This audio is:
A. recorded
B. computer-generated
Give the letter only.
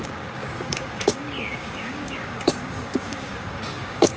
B